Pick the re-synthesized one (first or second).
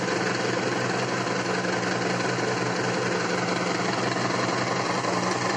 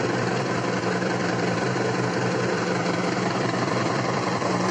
second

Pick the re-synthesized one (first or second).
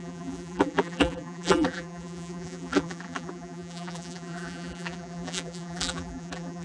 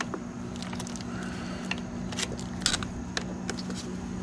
first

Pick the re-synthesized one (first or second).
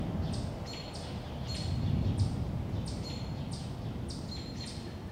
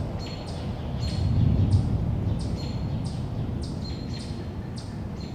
first